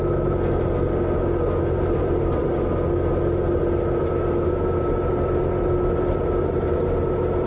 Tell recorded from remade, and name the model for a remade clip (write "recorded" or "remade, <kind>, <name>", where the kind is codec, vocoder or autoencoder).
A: recorded